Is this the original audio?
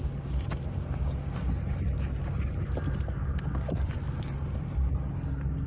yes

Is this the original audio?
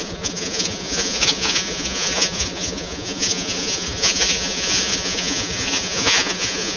no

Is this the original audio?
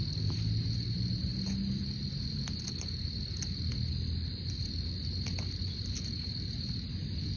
yes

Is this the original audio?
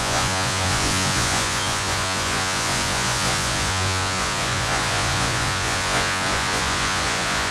no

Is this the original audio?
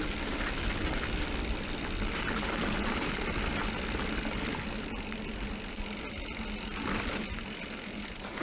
yes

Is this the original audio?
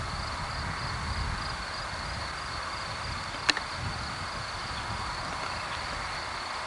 yes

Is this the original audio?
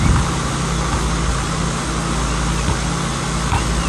yes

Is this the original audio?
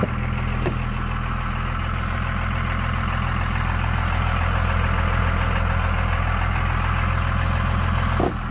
yes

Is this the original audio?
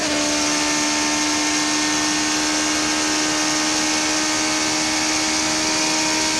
yes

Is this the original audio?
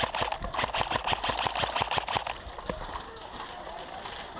yes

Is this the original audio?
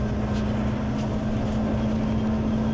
yes